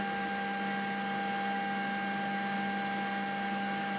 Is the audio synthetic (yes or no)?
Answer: no